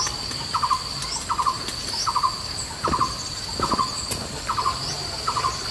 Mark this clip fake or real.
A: real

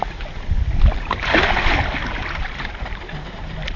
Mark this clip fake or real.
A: real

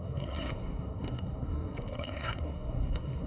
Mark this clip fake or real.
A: fake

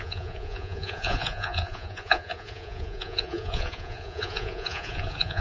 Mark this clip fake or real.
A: fake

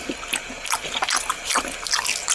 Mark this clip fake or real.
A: real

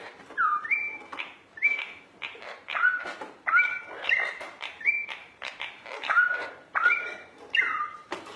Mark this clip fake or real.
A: fake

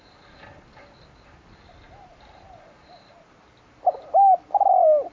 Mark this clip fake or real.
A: real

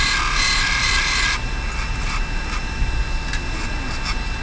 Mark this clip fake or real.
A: real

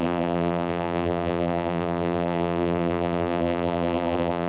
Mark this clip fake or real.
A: fake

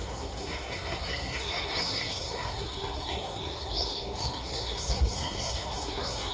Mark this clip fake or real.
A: fake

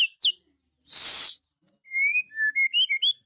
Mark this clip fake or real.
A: real